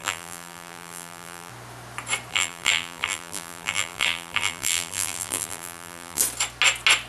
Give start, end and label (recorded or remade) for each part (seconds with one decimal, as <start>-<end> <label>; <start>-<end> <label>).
0.0-1.5 remade; 1.5-2.3 recorded; 2.3-6.2 remade; 6.2-7.1 recorded